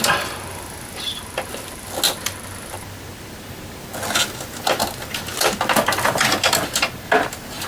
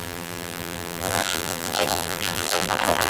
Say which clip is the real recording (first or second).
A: first